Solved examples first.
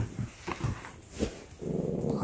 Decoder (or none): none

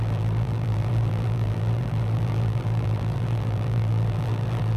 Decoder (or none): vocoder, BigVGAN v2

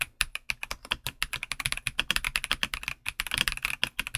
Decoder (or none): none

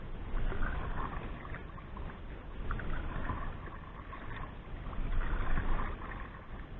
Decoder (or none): none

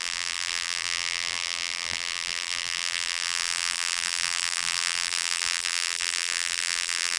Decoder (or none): vocoder, BigVGAN v2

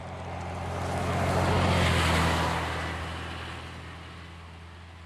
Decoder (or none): none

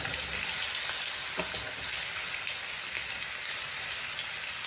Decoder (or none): none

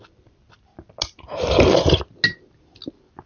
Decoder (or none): none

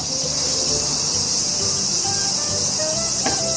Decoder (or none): vocoder, BigVGAN v2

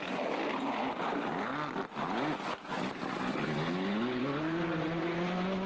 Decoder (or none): none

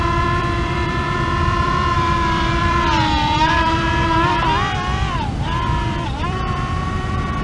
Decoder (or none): vocoder, BigVGAN v2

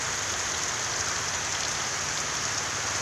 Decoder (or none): none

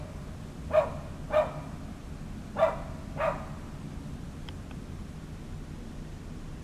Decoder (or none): none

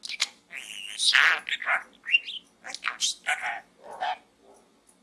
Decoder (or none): none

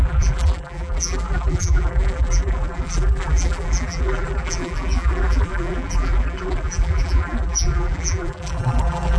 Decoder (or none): vocoder, BigVGAN v2